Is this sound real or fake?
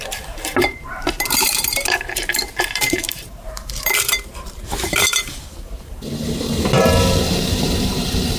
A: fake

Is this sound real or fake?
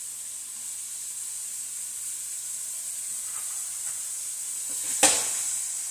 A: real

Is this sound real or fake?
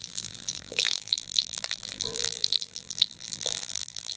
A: fake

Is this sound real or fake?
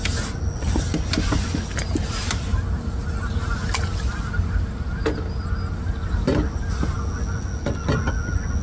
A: real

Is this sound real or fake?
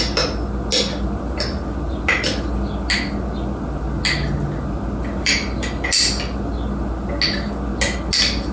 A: real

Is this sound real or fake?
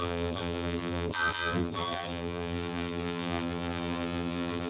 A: fake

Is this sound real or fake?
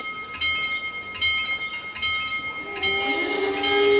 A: real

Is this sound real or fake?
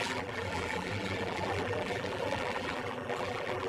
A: fake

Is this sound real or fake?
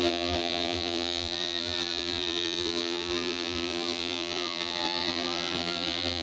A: fake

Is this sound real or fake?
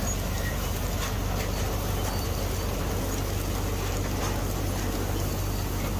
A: real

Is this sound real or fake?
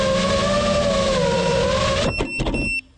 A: real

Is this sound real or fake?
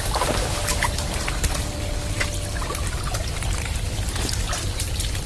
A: real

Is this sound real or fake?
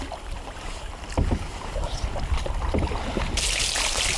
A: real